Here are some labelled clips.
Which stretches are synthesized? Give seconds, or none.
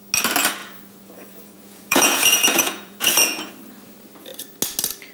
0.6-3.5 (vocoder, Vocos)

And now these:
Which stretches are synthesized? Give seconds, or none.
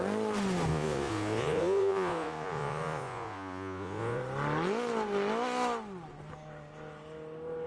0.7-4.2 (vocoder, Vocos)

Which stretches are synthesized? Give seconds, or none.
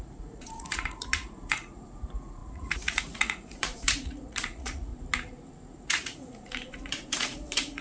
0.0-4.9 (vocoder, Vocos); 5.8-7.8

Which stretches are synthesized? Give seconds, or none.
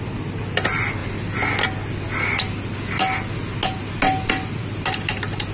none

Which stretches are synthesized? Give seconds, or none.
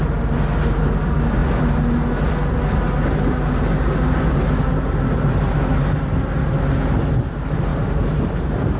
none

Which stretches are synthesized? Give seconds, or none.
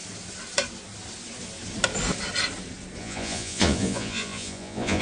3.0-5.0 (vocoder, Vocos)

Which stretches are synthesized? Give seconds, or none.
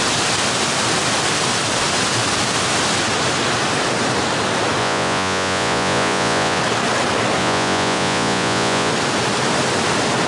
4.8-6.6 (vocoder, Vocos); 7.4-8.9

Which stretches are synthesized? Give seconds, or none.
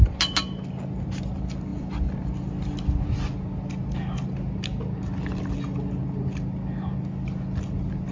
none